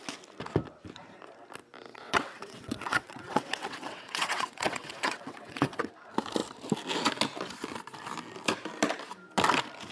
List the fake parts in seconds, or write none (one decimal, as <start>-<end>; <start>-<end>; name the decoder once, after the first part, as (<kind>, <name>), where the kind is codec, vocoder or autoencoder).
1.9-5.9 (vocoder, WaveNeXt)